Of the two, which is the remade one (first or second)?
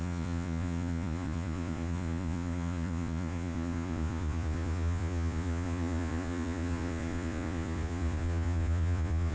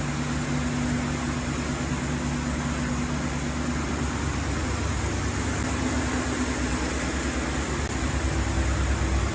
first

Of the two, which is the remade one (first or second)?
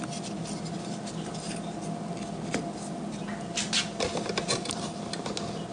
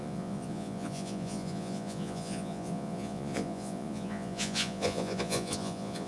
second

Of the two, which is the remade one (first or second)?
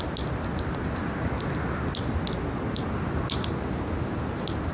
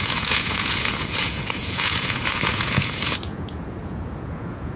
second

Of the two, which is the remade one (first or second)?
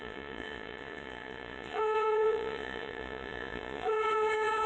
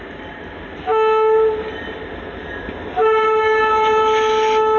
first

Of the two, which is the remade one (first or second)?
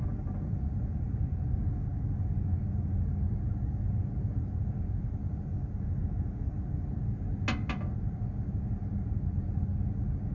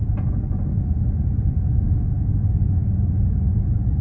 second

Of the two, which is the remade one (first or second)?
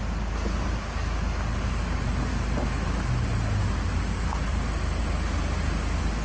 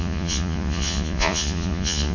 second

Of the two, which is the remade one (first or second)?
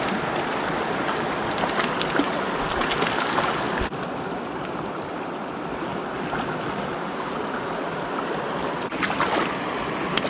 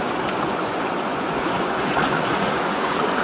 second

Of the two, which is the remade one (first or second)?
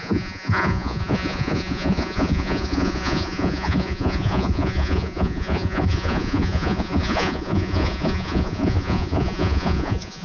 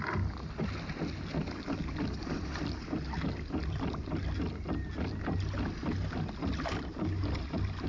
first